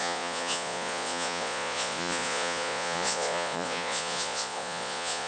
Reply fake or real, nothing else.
fake